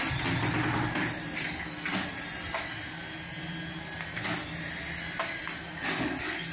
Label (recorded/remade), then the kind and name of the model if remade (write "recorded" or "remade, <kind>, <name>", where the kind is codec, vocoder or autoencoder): recorded